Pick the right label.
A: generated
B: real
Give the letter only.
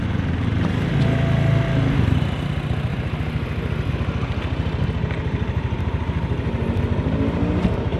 B